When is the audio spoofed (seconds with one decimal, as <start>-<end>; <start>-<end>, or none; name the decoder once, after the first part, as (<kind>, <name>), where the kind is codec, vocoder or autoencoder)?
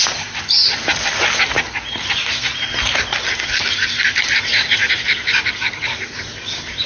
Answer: none